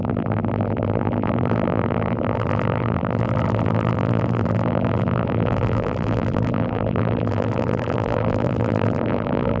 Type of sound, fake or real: fake